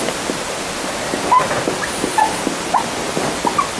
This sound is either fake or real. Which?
real